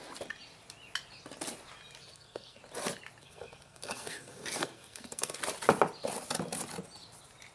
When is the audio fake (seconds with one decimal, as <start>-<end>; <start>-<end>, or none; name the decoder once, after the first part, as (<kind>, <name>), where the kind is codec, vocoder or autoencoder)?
2.0-2.6 (codec, SNAC); 3.2-5.4

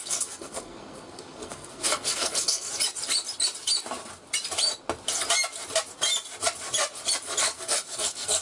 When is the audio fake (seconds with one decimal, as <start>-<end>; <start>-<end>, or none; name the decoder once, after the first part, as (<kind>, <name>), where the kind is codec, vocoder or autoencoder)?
0.0-2.7 (codec, SNAC); 7.4-8.4

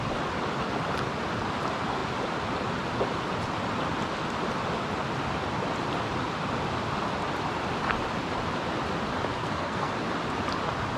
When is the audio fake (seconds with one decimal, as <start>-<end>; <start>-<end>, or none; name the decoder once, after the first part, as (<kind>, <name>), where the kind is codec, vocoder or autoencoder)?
9.4-9.9 (codec, SNAC)